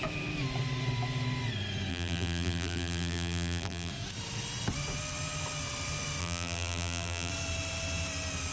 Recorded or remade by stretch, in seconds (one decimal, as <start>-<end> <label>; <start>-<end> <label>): 0.0-1.9 recorded; 1.9-3.9 remade; 3.9-6.2 recorded; 6.2-7.3 remade; 7.3-8.5 recorded